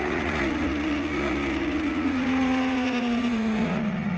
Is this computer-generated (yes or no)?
yes